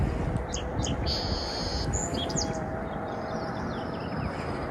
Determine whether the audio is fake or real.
real